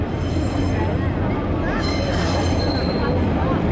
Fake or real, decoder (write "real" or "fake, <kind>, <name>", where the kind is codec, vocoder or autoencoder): real